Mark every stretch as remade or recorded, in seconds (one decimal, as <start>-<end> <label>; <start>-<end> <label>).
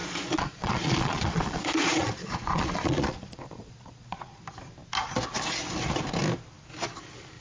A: 0.0-4.4 remade; 4.4-7.4 recorded